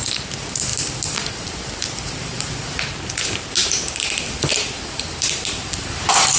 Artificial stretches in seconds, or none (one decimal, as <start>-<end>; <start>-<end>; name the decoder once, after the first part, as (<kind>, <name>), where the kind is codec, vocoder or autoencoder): 3.6-4.2 (vocoder, BigVGAN v2)